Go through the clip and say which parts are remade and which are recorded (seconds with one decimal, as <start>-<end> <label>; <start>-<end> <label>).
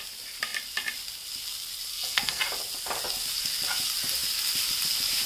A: 0.0-1.9 recorded; 1.9-2.4 remade; 2.4-5.3 recorded